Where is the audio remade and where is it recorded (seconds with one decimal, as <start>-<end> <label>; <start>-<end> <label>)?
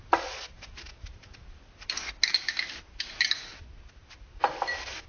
0.0-2.3 recorded; 2.3-3.1 remade; 3.1-5.1 recorded